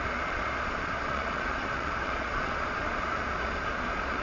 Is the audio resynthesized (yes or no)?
yes